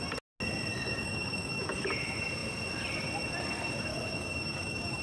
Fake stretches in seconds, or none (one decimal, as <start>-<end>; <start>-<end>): 0.7-1.9; 3.9-5.0

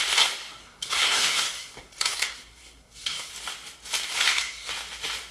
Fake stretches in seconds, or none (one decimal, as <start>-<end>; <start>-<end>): 0.6-3.3; 4.1-4.7

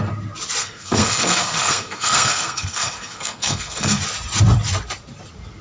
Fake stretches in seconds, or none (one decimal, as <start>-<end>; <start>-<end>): 0.6-4.0

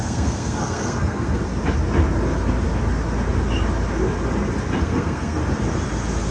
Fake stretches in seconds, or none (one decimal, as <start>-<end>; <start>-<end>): 0.0-1.4; 4.8-5.4

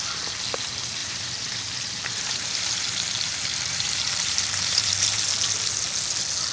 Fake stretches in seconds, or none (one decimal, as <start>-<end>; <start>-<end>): 1.0-4.9